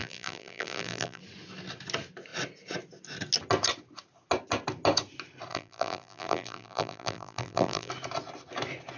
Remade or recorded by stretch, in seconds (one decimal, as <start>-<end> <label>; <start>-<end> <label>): 0.0-1.2 remade; 1.2-5.5 recorded; 5.5-7.9 remade; 7.9-9.0 recorded